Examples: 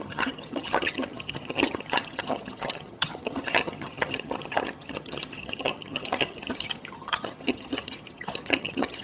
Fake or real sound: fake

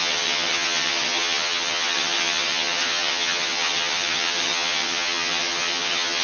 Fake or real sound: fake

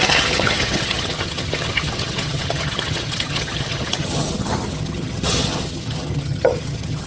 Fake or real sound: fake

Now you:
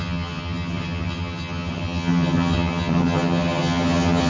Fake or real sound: fake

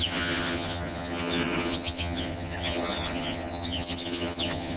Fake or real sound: fake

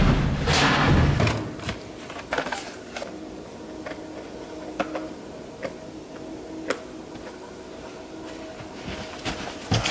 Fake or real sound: real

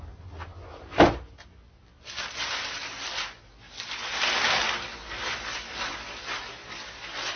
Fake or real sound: real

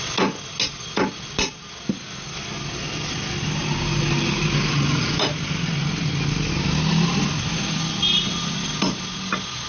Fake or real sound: real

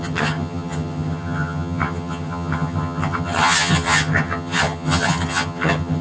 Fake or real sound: fake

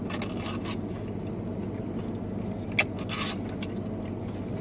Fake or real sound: real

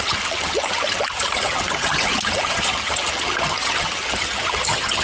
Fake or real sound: fake